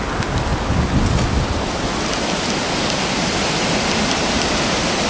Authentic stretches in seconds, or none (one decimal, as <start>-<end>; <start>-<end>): 0.0-5.1